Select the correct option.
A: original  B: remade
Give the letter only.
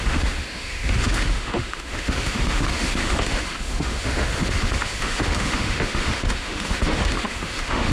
B